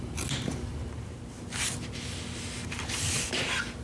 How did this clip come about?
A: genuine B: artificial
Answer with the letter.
A